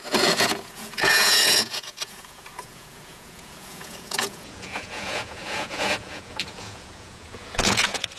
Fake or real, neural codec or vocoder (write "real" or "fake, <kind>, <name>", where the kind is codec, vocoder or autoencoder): fake, vocoder, Vocos